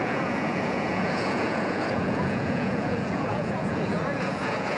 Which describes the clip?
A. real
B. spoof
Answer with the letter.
B